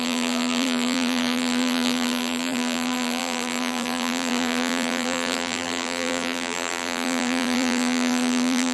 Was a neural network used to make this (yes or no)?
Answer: yes